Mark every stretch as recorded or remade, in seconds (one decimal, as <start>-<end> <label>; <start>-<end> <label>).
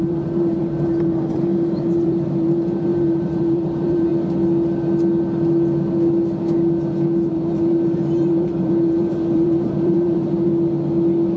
0.0-4.1 remade; 4.1-7.3 recorded; 7.3-10.5 remade; 10.5-11.4 recorded